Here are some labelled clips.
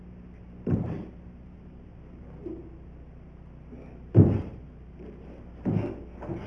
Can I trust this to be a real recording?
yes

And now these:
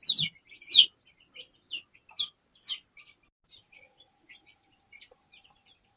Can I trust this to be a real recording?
yes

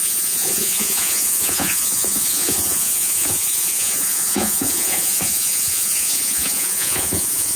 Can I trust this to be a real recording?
no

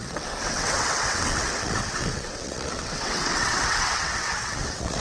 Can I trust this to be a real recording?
no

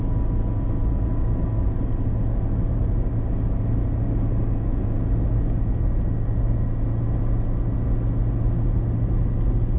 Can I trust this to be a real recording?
yes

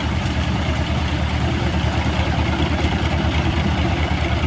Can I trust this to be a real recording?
no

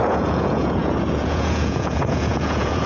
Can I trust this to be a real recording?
no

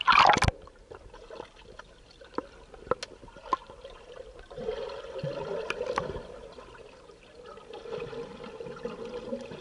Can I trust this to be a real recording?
yes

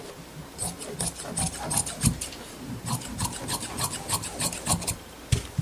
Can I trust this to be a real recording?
yes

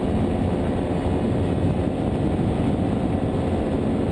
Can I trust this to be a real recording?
yes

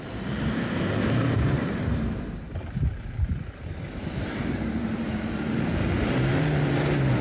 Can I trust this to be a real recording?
no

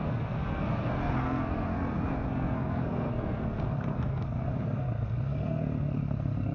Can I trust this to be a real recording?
no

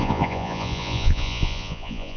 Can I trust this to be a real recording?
no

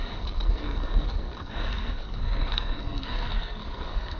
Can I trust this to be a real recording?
no